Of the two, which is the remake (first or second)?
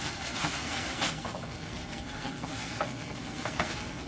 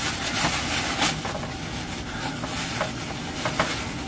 first